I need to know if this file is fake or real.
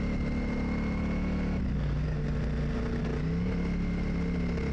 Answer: real